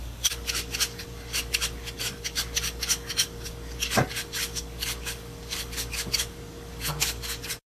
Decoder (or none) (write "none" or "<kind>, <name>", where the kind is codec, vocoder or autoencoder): codec, DAC